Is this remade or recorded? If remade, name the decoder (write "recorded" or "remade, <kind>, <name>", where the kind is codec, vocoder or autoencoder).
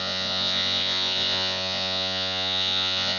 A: remade, vocoder, Vocos